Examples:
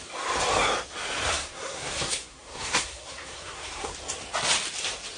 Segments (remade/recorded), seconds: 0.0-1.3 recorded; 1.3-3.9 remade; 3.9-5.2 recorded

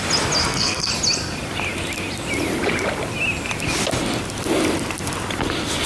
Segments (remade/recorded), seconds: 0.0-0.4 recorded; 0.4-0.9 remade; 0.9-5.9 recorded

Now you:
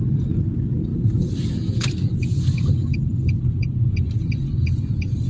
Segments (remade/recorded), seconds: 0.0-5.3 recorded

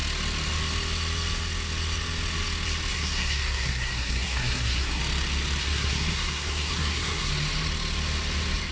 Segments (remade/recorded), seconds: 0.0-2.9 recorded; 2.9-5.0 remade; 5.0-5.6 recorded; 5.6-7.3 remade; 7.3-8.7 recorded